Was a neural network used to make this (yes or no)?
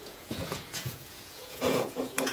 yes